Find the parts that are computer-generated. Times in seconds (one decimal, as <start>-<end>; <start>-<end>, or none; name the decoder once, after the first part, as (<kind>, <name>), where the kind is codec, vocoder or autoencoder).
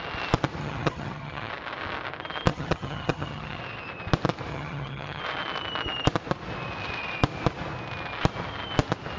0.6-1.5 (vocoder, HiFi-GAN); 2.5-3.6; 4.5-5.2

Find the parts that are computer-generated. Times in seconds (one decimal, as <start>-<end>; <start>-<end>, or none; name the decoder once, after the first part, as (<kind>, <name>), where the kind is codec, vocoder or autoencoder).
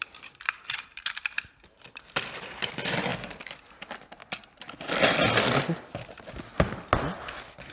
0.0-2.7 (vocoder, BigVGAN v2)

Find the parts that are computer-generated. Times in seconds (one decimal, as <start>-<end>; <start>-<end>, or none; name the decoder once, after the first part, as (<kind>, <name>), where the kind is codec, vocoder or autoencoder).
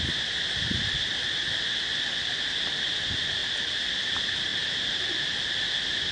3.4-3.9 (vocoder, BigVGAN v2)